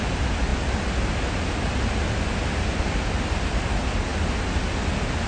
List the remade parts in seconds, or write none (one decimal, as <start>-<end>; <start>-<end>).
none